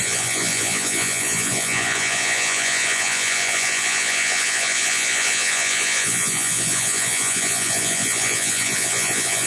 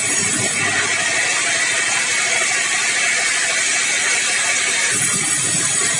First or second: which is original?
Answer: second